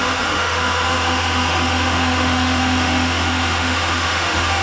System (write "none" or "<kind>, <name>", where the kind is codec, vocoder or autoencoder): autoencoder, DAC-VAE